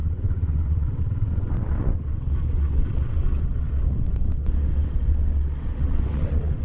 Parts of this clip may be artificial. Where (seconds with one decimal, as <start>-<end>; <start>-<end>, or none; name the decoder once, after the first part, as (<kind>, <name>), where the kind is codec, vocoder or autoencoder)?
0.0-6.6 (vocoder, WaveNeXt)